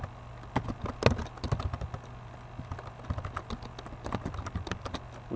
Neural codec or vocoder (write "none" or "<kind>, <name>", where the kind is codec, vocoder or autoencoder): none